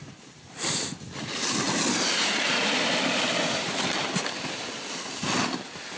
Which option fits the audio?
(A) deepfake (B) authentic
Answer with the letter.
B